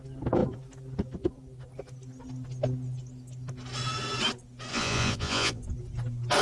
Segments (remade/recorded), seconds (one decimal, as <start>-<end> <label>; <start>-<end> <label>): 0.0-4.7 recorded; 4.7-5.6 remade; 5.6-6.4 recorded

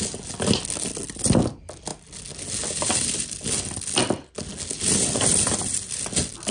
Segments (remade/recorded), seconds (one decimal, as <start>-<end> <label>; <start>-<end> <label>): 0.0-6.5 recorded

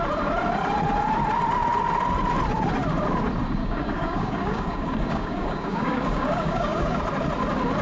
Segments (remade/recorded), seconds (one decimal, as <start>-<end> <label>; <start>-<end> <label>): 0.0-3.6 recorded; 3.6-7.0 remade; 7.0-7.8 recorded

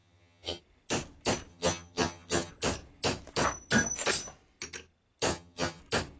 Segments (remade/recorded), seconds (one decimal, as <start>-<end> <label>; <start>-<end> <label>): 0.0-0.6 remade; 0.6-1.5 recorded; 1.5-2.5 remade; 2.5-5.3 recorded; 5.3-5.8 remade; 5.8-6.2 recorded

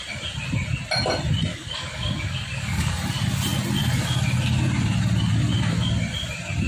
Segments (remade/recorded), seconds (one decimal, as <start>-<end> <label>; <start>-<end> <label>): 0.0-1.5 recorded; 1.5-2.9 remade; 2.9-6.7 recorded

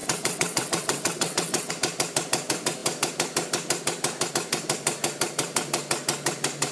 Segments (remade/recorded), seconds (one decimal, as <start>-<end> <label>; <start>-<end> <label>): 0.0-1.7 remade; 1.7-6.7 recorded

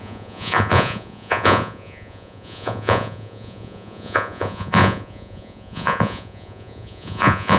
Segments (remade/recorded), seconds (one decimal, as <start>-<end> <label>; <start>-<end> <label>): 0.0-7.6 remade

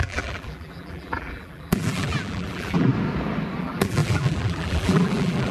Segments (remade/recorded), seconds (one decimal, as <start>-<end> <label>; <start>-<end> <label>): 0.0-2.9 remade; 2.9-3.6 recorded; 3.6-5.5 remade